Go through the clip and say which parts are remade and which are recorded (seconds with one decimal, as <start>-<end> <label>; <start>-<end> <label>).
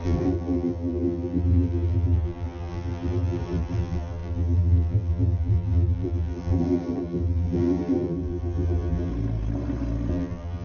0.0-9.1 remade; 9.1-10.1 recorded; 10.1-10.6 remade